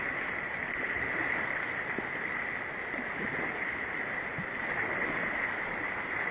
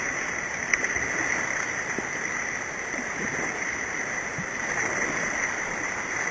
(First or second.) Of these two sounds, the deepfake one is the second